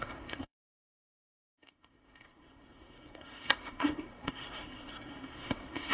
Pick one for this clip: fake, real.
fake